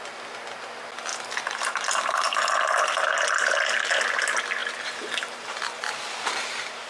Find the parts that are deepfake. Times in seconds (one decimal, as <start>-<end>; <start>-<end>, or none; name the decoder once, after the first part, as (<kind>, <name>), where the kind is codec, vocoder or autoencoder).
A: 1.1-2.5 (vocoder, BigVGAN v2); 4.6-6.9